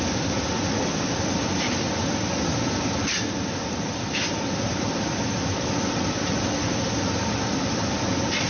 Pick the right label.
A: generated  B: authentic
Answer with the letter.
A